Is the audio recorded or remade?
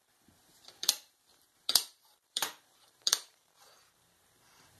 remade